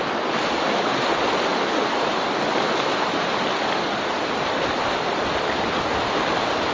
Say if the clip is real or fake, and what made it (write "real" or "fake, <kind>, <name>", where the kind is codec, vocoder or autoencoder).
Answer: real